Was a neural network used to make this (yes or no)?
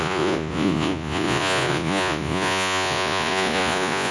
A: yes